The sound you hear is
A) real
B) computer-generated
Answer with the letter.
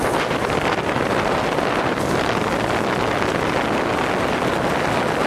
A